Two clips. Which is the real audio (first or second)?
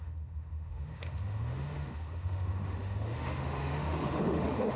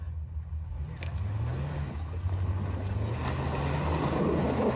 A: second